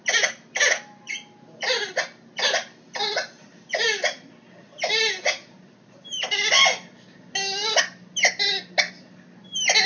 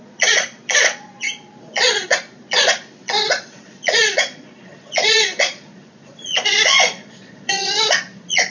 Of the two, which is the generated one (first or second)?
second